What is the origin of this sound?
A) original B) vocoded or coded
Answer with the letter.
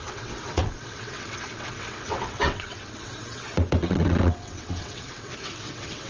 B